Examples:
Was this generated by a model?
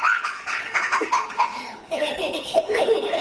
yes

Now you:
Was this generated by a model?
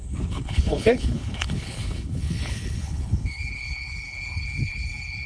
yes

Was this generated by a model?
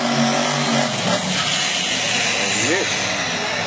no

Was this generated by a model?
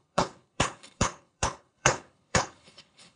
yes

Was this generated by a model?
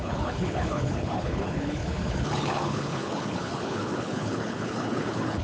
yes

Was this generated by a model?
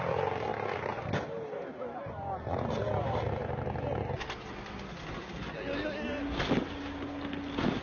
no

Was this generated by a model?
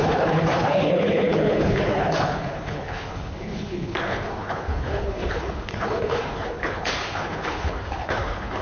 yes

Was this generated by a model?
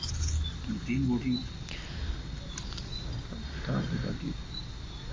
no